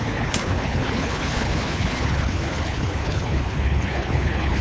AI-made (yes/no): yes